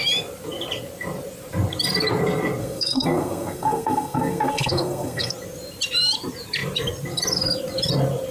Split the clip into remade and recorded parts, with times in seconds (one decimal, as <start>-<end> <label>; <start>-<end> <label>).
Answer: 0.0-2.6 recorded; 2.6-5.3 remade; 5.3-8.3 recorded